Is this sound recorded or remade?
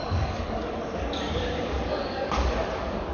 remade